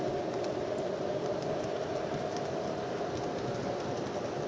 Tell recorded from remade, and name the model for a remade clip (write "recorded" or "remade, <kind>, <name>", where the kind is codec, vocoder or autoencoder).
recorded